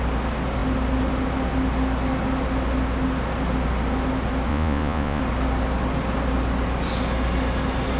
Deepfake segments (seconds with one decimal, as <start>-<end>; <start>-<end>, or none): 4.5-5.2